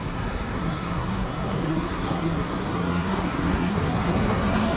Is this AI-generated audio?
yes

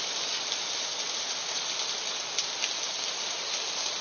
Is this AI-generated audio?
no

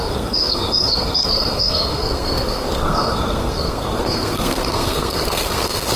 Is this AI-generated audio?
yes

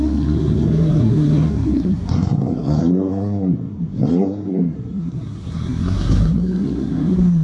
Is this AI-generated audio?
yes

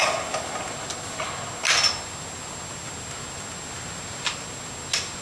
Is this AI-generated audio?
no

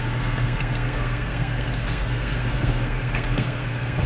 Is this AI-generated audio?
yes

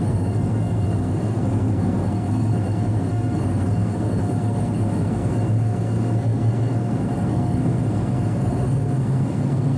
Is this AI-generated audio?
yes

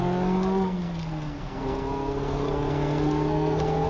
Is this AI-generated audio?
yes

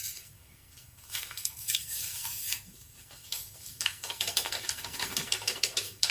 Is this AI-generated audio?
yes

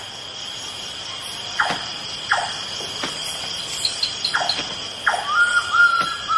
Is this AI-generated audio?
no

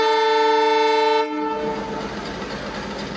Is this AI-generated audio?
no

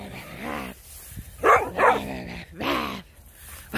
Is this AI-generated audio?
no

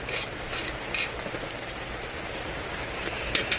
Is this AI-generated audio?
no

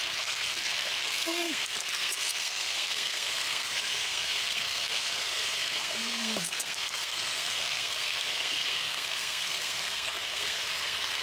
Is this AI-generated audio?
yes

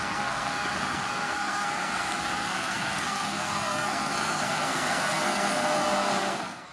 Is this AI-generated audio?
yes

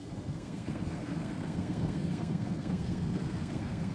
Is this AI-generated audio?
yes